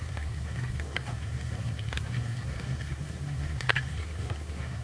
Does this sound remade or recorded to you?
remade